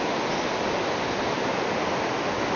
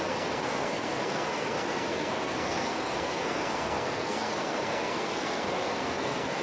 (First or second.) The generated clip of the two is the second